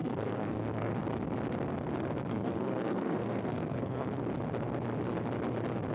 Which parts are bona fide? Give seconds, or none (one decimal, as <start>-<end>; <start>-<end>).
1.0-2.3; 4.2-5.9

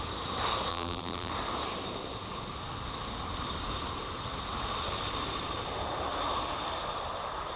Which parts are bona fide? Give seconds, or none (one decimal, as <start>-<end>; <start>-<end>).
0.0-0.7; 1.3-7.6

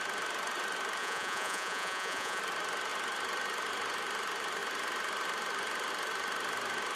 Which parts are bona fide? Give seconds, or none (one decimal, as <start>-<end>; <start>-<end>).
0.0-1.0; 2.4-7.0

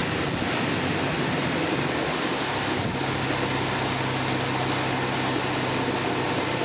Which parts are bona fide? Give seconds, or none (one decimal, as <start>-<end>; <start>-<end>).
0.0-6.6